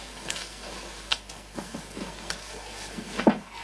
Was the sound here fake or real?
fake